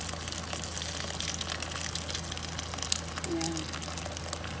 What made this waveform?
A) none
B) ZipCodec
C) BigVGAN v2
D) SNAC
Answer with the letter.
A